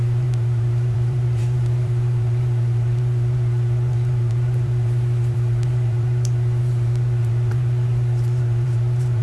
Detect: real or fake fake